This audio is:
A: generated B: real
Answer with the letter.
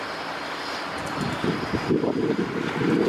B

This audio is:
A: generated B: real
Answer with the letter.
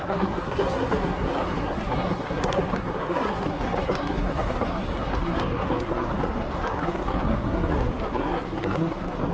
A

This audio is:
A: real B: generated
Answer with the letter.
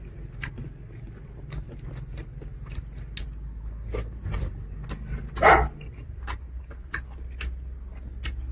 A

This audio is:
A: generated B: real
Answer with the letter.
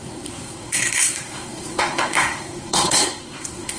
A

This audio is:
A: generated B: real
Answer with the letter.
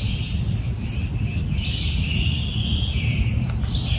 B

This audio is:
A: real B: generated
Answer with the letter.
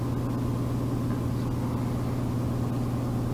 A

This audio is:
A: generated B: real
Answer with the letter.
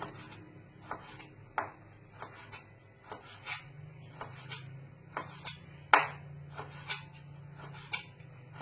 B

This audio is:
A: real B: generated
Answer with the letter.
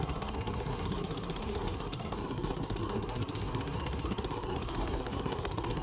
B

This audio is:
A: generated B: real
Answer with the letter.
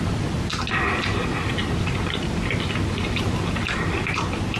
B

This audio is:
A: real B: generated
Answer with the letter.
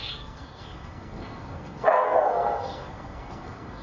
B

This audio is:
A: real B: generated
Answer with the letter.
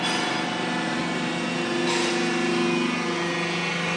A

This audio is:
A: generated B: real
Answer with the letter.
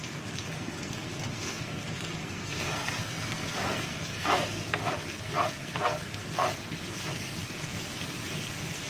A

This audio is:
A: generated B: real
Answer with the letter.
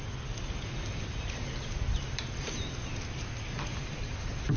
B